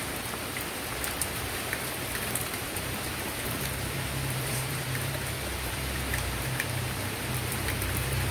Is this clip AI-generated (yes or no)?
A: yes